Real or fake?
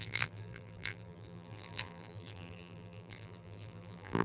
fake